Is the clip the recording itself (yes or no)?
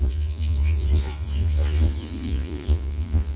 no